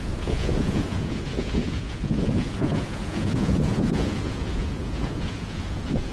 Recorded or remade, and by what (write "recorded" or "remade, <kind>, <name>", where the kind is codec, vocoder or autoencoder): remade, vocoder, Vocos